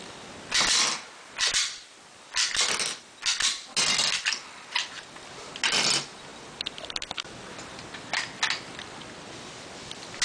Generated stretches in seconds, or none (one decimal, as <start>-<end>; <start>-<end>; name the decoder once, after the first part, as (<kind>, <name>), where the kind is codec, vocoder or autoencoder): none